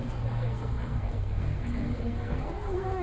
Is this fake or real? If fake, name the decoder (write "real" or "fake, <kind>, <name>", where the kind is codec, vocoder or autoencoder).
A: fake, codec, SNAC